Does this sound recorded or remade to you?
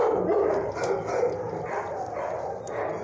remade